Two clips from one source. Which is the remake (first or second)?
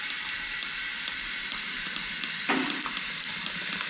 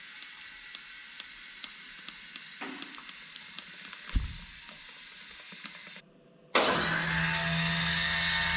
first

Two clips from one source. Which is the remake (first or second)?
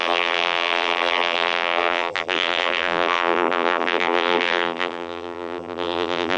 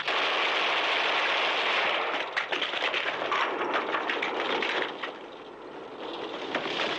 first